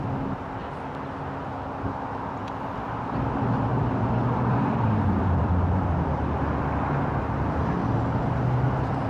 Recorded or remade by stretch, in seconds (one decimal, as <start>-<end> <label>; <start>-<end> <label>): 0.0-3.7 recorded; 3.7-5.9 remade; 5.9-9.1 recorded